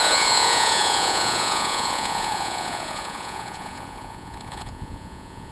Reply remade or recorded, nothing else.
remade